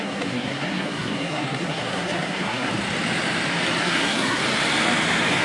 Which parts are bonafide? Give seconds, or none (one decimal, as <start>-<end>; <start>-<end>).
2.7-3.8; 4.4-5.4